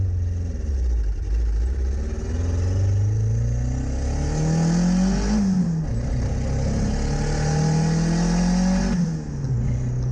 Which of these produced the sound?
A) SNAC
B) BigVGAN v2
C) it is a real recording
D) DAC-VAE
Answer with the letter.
C